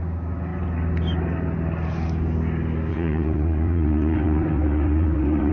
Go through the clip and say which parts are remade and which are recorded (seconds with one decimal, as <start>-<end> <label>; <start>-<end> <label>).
0.0-2.9 recorded; 2.9-5.5 remade